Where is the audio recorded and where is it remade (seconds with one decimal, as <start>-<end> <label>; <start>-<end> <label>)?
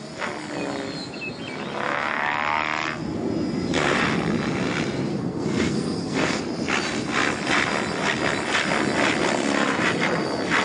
0.0-5.1 recorded; 5.1-6.4 remade; 6.4-10.6 recorded